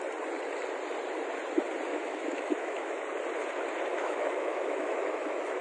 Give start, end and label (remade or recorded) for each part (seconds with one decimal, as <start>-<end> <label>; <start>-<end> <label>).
0.0-1.9 recorded; 1.9-3.0 remade; 3.0-3.9 recorded; 3.9-5.6 remade